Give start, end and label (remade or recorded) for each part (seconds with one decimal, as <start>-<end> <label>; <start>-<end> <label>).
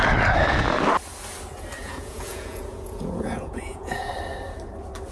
0.0-1.8 recorded; 1.8-4.1 remade; 4.1-5.1 recorded